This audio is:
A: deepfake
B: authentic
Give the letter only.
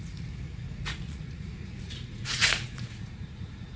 A